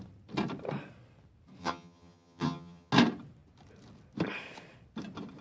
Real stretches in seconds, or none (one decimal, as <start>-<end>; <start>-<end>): 0.0-1.6; 2.9-5.4